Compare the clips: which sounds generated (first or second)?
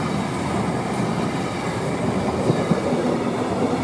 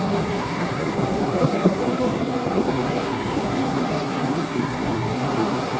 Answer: second